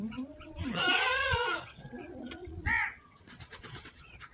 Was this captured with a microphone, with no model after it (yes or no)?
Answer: no